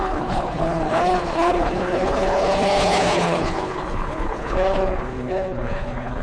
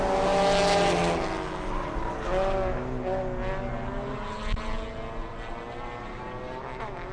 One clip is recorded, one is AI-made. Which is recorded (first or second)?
second